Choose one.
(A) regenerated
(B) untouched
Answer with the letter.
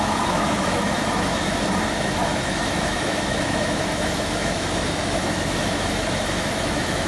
A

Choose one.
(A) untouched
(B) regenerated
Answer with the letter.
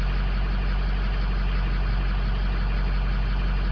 A